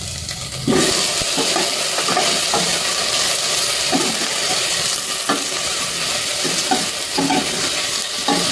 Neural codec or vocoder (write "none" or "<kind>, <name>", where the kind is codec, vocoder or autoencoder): none